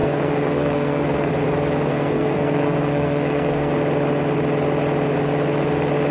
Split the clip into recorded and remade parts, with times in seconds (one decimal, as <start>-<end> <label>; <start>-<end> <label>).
0.0-1.3 remade; 1.3-1.9 recorded; 1.9-3.7 remade; 3.7-6.1 recorded